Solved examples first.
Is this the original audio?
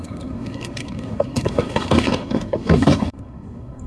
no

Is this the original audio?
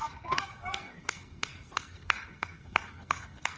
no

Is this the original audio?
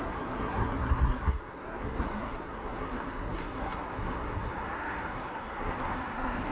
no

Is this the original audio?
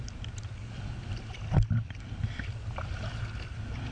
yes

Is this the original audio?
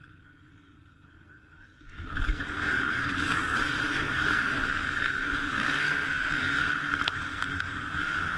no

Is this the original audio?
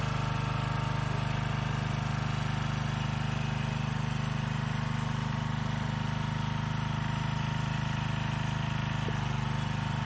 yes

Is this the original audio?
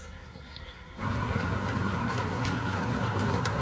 no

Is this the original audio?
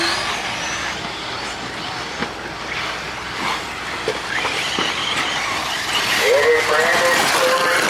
yes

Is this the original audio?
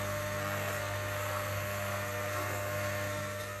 no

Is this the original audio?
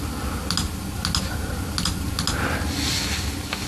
yes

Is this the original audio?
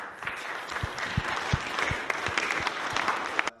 yes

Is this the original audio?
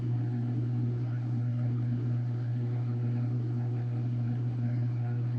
no